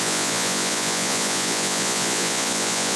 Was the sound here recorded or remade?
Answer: remade